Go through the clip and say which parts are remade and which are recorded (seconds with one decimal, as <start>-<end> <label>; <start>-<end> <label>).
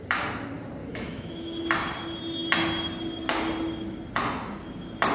0.0-0.8 recorded; 0.8-1.6 remade; 1.6-5.1 recorded